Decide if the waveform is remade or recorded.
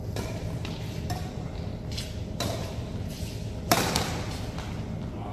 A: recorded